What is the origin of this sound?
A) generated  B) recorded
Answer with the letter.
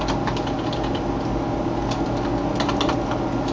B